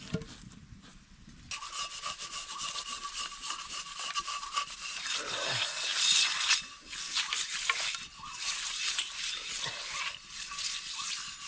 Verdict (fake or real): real